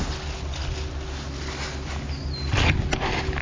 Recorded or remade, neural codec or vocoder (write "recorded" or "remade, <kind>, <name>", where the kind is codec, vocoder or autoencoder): recorded